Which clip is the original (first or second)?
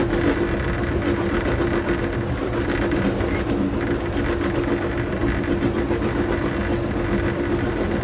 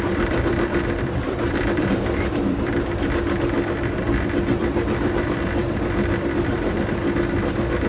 first